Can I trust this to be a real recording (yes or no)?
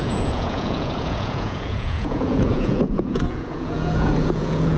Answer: no